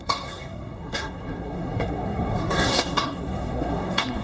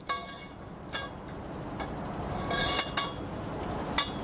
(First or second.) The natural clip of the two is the second